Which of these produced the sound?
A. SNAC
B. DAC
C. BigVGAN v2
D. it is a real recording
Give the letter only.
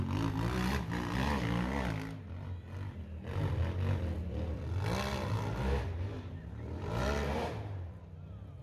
D